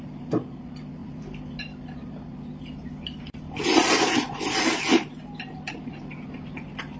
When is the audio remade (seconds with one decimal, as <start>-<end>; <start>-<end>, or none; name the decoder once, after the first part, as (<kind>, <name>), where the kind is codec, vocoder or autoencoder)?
none